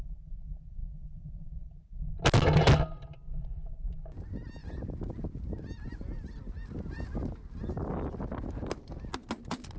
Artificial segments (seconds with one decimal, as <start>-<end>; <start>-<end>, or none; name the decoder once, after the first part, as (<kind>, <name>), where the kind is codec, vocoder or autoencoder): none